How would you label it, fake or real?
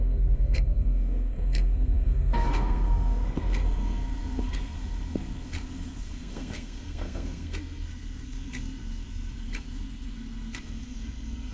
fake